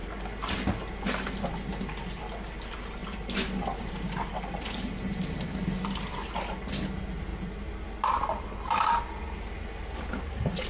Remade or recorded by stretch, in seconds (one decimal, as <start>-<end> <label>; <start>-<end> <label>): 0.0-1.7 recorded; 1.7-2.2 remade; 2.2-3.0 recorded; 3.0-6.2 remade; 6.2-10.7 recorded